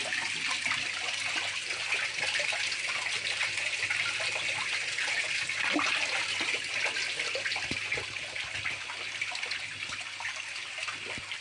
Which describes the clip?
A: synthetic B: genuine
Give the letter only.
B